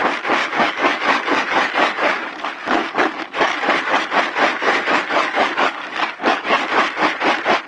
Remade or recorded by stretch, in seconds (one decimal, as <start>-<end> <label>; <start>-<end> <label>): 0.0-0.4 recorded; 0.4-2.3 remade; 2.3-2.8 recorded; 2.8-4.1 remade; 4.1-4.6 recorded; 4.6-6.6 remade; 6.6-7.7 recorded